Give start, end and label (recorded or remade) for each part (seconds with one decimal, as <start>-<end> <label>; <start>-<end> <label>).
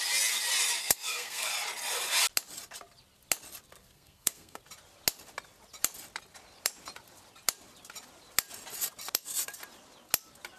0.0-0.8 recorded; 0.8-1.5 remade; 1.5-3.8 recorded; 3.8-4.6 remade; 4.6-10.6 recorded